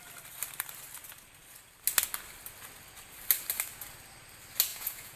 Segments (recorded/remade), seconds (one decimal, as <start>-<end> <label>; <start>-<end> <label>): 0.0-4.7 recorded; 4.7-5.2 remade